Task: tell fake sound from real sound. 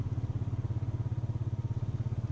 real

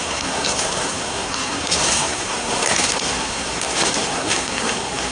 fake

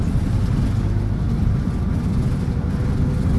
real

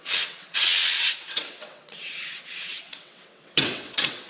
fake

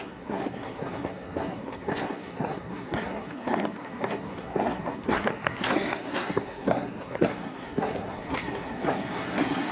fake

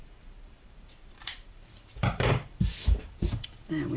fake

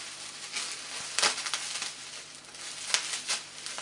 real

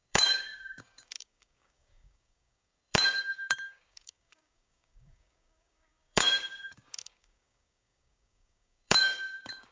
fake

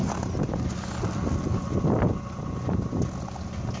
real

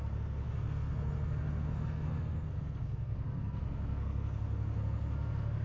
fake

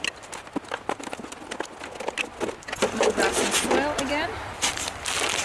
real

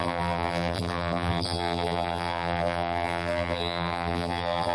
fake